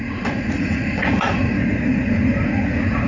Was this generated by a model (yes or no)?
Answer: yes